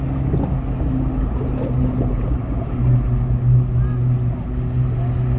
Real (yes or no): yes